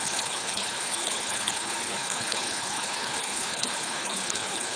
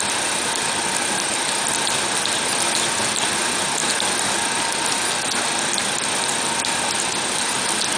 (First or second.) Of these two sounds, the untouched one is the second